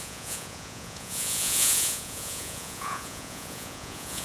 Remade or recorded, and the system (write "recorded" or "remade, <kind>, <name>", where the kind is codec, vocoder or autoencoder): remade, vocoder, Vocos